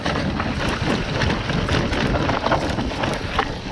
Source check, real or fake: real